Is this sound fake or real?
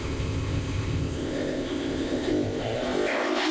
fake